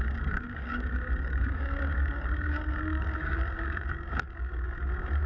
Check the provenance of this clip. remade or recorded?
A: remade